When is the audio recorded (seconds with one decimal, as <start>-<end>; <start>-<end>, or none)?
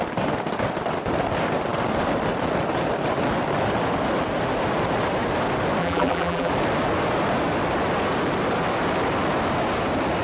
0.0-5.8; 6.5-10.2